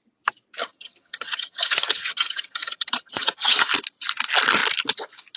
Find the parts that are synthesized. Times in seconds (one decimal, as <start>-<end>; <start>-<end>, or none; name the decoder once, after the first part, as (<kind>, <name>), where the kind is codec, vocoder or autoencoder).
0.6-3.7 (vocoder, HiFi-GAN)

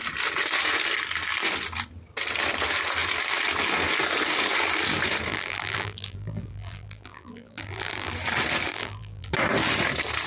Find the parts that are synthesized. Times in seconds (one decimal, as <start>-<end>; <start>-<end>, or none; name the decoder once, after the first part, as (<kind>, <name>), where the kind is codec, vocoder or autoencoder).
5.3-8.1 (vocoder, BigVGAN v2); 8.7-9.3

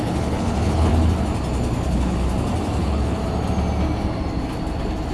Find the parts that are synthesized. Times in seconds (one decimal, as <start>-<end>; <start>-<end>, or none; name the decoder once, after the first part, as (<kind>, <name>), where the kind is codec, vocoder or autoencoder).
0.0-0.9 (codec, HILCodec); 1.9-2.3; 2.8-3.2

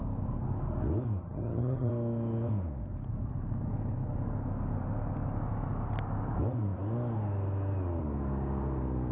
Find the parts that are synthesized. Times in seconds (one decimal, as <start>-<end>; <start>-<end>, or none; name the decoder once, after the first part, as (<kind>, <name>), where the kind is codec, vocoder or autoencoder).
1.2-1.9 (vocoder, HiFi-GAN)

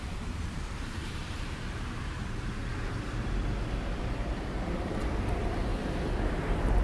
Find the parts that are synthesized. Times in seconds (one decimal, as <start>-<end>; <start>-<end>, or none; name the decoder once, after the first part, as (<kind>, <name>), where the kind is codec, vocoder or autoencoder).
0.0-2.7 (vocoder, BigVGAN v2); 4.0-5.7; 6.3-6.8